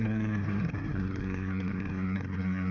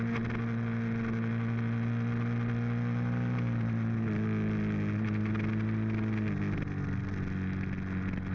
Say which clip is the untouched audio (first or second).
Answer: second